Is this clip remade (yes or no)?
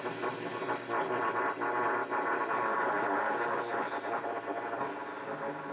no